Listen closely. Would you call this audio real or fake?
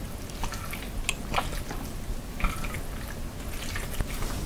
real